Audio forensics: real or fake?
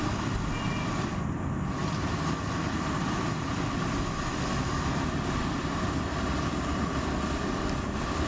real